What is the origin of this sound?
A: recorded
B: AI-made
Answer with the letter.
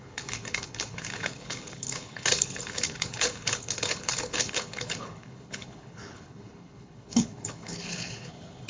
B